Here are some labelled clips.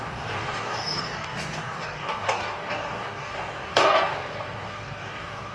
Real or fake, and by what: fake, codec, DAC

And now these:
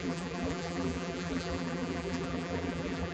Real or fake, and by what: fake, vocoder, BigVGAN v2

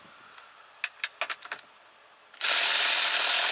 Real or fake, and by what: real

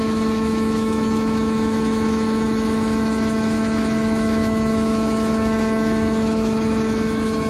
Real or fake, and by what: fake, autoencoder, DAC-VAE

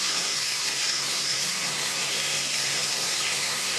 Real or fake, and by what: fake, codec, SNAC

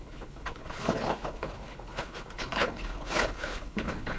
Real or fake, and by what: fake, codec, HILCodec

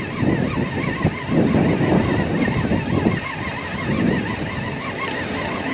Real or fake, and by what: real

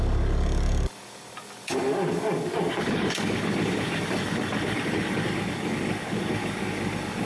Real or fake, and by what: fake, codec, DAC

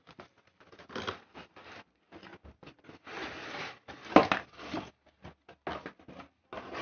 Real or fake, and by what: real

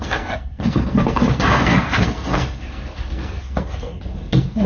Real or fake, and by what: fake, codec, SNAC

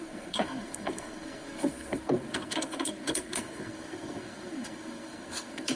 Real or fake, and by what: fake, codec, SNAC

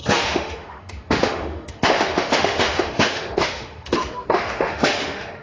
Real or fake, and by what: fake, autoencoder, DAC-VAE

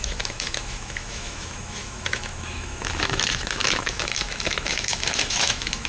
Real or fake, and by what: fake, autoencoder, DAC-VAE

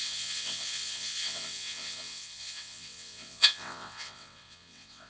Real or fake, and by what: fake, vocoder, WaveNeXt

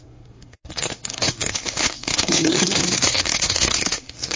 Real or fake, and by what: fake, codec, SNAC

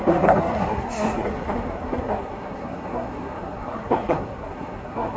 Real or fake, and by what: fake, codec, SNAC